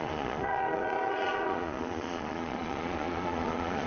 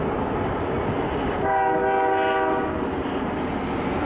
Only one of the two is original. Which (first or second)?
second